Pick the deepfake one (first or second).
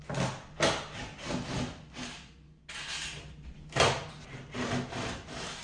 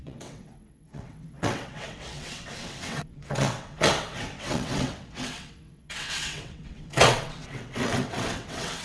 second